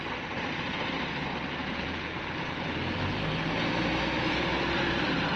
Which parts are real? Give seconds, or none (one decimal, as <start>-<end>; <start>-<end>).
0.0-1.6; 2.2-5.4